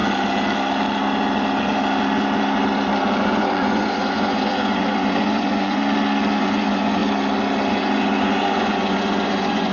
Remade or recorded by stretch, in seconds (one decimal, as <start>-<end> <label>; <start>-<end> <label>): 0.0-3.2 recorded; 3.2-5.8 remade; 5.8-6.4 recorded; 6.4-7.0 remade; 7.0-7.7 recorded; 7.7-9.7 remade